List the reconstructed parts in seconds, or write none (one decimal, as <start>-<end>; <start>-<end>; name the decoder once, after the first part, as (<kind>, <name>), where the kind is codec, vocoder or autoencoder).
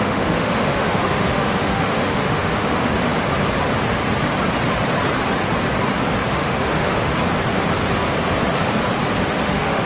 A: 0.0-3.1 (autoencoder, DAC-VAE); 6.3-7.1; 9.4-9.9